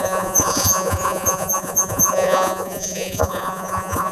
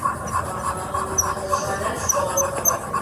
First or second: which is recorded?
second